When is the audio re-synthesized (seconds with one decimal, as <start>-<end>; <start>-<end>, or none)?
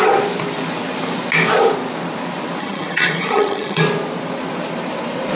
2.6-3.8